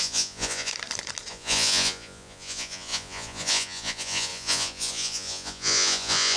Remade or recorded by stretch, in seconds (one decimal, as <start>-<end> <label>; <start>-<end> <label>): 0.0-0.7 remade; 0.7-1.3 recorded; 1.3-6.4 remade